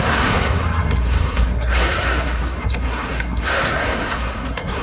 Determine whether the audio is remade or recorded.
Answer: remade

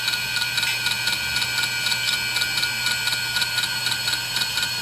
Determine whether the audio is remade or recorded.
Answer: recorded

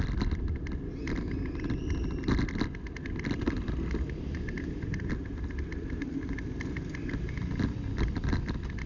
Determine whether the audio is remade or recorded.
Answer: recorded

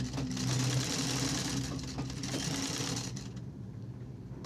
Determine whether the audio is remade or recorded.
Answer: recorded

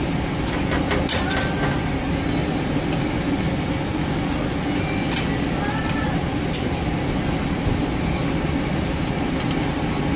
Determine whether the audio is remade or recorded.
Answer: recorded